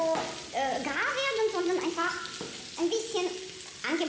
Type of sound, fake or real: real